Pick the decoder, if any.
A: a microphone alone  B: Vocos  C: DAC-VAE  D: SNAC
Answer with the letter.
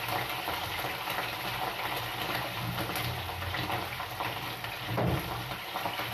A